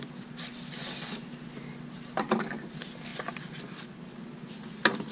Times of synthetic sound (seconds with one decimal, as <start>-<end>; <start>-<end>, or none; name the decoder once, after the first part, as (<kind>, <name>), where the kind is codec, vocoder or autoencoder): none